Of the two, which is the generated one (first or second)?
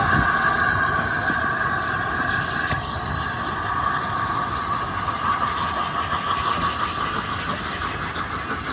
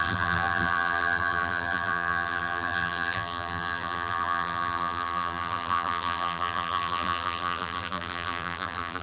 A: second